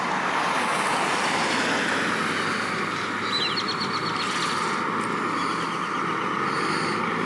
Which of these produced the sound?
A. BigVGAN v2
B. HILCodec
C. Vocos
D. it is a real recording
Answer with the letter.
D